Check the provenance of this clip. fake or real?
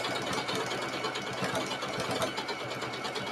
real